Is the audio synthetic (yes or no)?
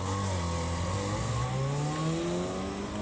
no